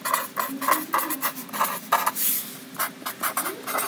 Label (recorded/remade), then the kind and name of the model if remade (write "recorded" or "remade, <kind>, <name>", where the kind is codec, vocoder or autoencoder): recorded